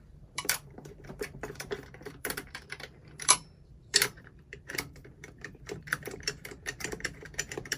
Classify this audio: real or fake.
fake